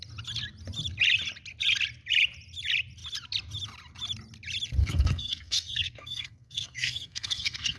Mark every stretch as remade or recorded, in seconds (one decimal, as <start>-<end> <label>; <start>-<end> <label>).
0.0-4.8 recorded; 4.8-7.8 remade